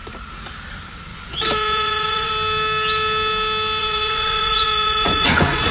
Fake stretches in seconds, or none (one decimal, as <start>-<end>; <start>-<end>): 1.1-2.3; 3.8-5.7